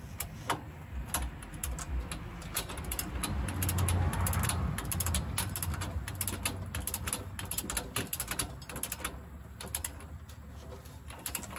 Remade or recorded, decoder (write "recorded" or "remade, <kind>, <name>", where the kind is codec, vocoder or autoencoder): recorded